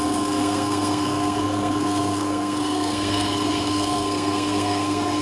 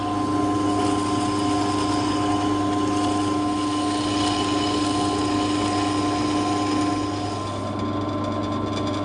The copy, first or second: first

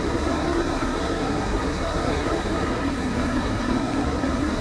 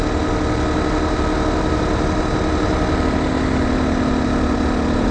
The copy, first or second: first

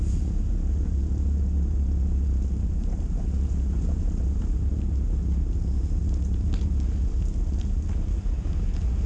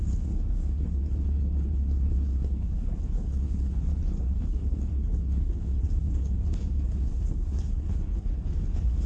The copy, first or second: second